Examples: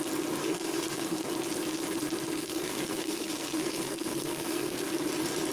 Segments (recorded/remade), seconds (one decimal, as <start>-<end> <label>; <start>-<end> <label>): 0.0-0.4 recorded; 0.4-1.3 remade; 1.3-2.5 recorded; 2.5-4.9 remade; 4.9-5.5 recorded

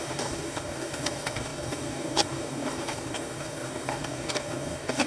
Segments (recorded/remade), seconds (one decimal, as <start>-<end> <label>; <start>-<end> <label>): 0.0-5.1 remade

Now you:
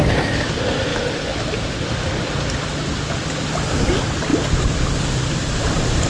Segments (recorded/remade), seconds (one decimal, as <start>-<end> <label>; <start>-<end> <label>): 0.0-6.1 recorded